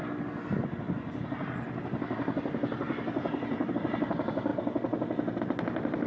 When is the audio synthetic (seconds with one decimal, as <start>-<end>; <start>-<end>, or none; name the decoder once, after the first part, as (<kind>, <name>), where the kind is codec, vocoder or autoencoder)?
none